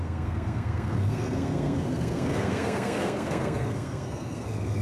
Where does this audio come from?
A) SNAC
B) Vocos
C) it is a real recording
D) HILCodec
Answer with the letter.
A